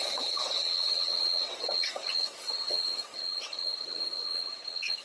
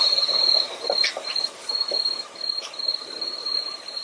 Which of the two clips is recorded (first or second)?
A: second